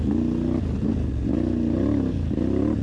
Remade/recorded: recorded